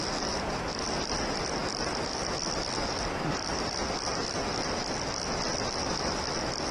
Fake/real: real